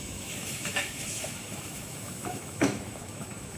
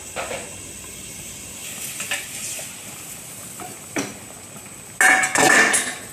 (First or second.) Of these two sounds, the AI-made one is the first